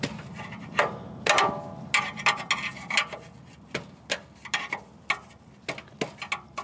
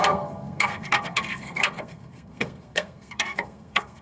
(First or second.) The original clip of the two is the first